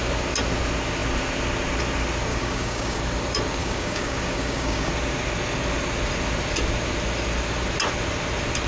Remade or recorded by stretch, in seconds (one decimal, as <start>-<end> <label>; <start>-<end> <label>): 0.0-2.3 recorded; 2.3-3.0 remade; 3.0-3.6 recorded; 3.6-4.9 remade; 4.9-8.7 recorded